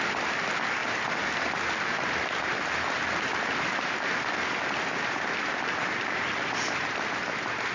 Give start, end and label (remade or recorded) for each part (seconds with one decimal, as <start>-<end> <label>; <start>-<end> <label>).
0.0-7.7 recorded